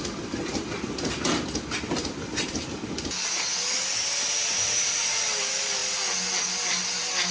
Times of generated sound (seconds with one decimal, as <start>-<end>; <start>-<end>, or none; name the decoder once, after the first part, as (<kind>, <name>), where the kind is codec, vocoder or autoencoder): none